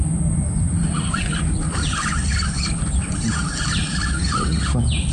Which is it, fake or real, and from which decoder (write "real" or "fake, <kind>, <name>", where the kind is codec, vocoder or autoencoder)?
real